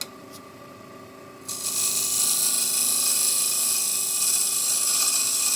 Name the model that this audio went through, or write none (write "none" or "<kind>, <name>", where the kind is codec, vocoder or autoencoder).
none